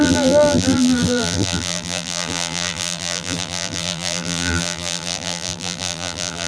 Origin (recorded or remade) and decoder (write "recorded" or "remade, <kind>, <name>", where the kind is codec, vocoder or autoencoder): remade, vocoder, BigVGAN v2